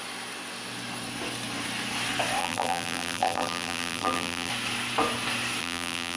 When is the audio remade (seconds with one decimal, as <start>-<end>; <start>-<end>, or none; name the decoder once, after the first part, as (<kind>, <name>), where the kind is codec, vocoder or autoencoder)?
2.4-4.5 (vocoder, BigVGAN v2); 5.6-6.2